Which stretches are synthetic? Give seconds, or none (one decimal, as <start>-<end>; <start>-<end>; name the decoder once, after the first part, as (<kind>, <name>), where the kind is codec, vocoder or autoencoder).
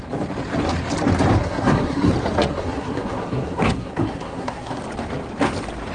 1.4-2.1 (codec, SNAC); 2.5-4.8